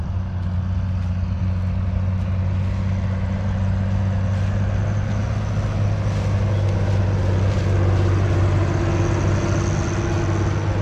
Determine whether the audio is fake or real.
real